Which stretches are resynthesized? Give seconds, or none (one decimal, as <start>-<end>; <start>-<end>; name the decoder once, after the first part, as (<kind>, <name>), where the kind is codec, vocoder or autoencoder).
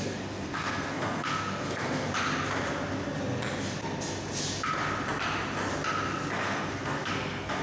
0.0-2.1 (codec, SNAC); 6.3-7.6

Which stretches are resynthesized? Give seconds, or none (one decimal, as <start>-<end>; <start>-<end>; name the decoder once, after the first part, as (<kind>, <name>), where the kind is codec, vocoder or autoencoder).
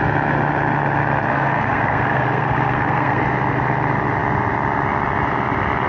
1.3-3.2 (codec, SNAC)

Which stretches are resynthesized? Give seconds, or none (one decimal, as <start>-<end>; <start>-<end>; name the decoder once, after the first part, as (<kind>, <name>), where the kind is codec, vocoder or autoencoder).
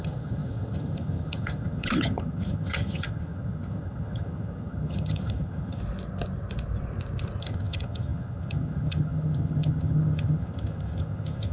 0.0-5.8 (vocoder, HiFi-GAN); 7.4-11.5